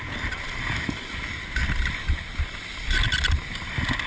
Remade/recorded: recorded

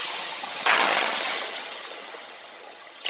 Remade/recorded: remade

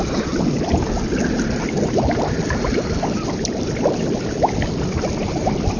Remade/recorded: recorded